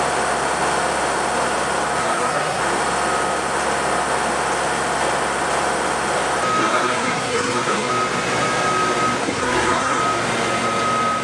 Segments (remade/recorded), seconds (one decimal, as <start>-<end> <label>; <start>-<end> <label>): 0.0-2.0 recorded; 2.0-2.6 remade; 2.6-6.6 recorded; 6.6-7.9 remade; 7.9-9.2 recorded; 9.2-10.0 remade; 10.0-11.2 recorded

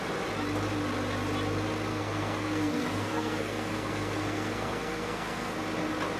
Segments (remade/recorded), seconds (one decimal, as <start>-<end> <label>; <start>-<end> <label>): 0.0-1.9 recorded; 1.9-5.5 remade; 5.5-6.2 recorded

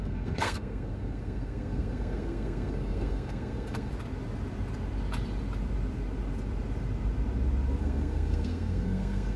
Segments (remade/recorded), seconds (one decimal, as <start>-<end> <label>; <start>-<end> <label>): 0.0-3.9 remade; 3.9-7.8 recorded; 7.8-9.4 remade

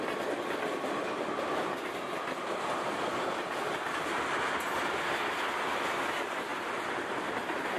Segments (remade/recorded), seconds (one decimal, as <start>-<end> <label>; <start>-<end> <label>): 0.0-7.8 recorded